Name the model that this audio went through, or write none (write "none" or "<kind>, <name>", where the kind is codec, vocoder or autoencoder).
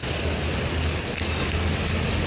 none